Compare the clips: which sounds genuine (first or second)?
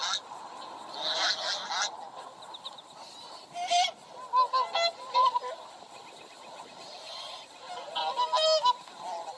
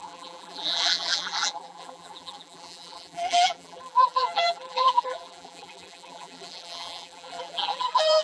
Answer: first